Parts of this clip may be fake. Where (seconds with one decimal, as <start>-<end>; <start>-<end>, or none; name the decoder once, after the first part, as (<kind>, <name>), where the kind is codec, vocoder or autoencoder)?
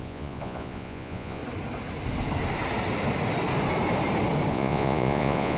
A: 0.0-1.4 (vocoder, Vocos); 4.5-5.6